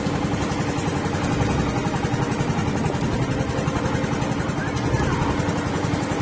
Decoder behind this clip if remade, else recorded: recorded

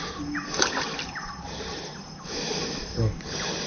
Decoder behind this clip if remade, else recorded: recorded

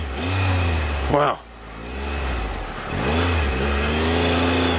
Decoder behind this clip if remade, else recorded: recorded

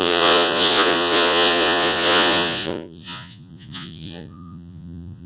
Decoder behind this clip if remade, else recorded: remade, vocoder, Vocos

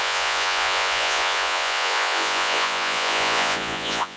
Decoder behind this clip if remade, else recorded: remade, vocoder, Vocos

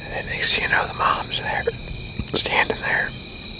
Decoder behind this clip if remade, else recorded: recorded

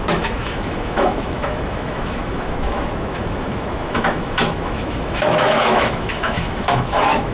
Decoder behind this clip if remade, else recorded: remade, autoencoder, DAC-VAE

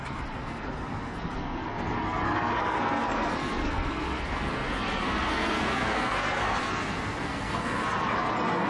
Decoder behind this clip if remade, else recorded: remade, codec, SNAC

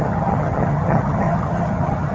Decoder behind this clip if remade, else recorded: remade, vocoder, HiFi-GAN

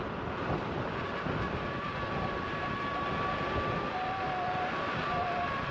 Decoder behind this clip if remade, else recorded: remade, vocoder, BigVGAN v2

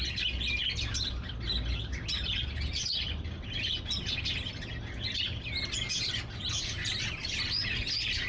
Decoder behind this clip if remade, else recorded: recorded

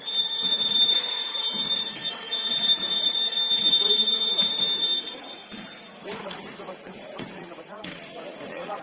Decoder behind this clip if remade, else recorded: remade, vocoder, Vocos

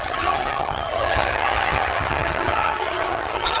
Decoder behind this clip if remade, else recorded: remade, vocoder, HiFi-GAN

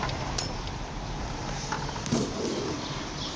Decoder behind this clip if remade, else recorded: recorded